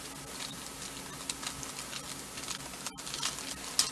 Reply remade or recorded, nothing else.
recorded